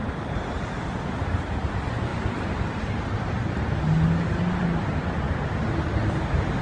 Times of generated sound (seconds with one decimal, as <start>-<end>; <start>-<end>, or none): none